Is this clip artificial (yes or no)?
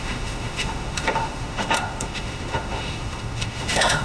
yes